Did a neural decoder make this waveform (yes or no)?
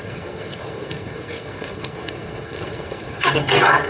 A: yes